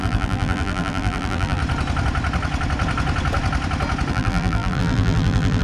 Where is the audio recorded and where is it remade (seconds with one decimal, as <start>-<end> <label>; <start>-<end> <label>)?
0.0-1.6 remade; 1.6-4.1 recorded; 4.1-5.6 remade

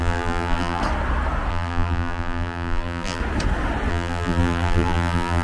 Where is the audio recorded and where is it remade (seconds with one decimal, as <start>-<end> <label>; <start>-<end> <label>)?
0.0-0.8 remade; 0.8-1.5 recorded; 1.5-3.2 remade; 3.2-3.9 recorded; 3.9-5.4 remade

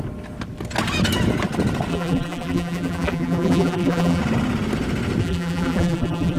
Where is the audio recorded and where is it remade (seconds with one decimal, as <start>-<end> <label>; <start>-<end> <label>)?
0.0-1.9 recorded; 1.9-4.2 remade; 4.2-5.2 recorded; 5.2-6.4 remade

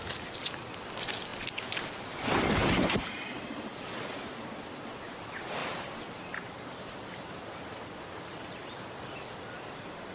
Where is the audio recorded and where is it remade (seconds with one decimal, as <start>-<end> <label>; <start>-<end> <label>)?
0.0-1.3 recorded; 1.3-3.7 remade; 3.7-5.6 recorded; 5.6-6.7 remade; 6.7-10.1 recorded